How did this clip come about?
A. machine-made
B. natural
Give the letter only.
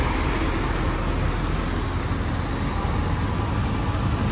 B